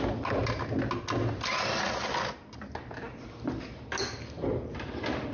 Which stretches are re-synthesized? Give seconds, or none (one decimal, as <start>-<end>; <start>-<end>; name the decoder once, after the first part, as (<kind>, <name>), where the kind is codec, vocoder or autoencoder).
none